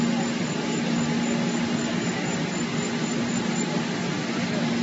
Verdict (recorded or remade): recorded